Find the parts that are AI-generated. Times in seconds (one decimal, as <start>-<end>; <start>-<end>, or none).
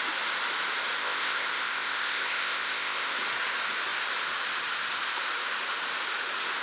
1.0-3.1